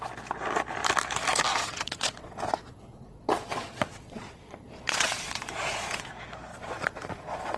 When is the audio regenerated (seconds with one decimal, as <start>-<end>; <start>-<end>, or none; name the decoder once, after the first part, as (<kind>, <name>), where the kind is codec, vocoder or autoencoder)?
1.5-6.1 (vocoder, Vocos); 6.5-7.6